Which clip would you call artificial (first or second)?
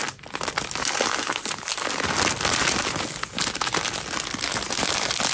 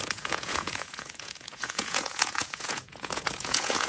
second